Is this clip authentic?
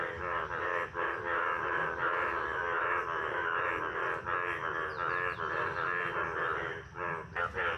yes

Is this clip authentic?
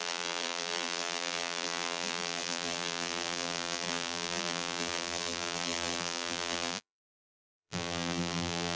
no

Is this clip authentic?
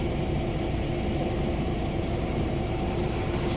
no